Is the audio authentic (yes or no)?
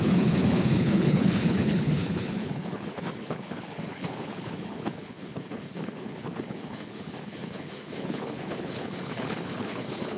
no